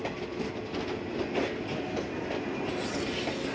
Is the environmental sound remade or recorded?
recorded